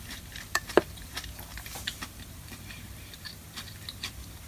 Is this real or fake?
fake